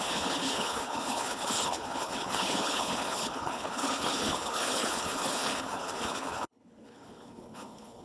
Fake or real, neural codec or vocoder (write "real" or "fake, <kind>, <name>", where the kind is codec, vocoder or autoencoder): fake, codec, HILCodec